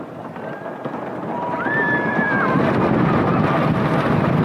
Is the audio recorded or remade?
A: recorded